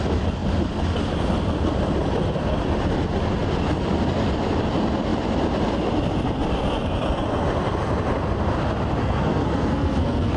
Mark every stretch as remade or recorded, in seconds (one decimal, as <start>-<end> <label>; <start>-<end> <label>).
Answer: 0.0-9.0 recorded; 9.0-10.4 remade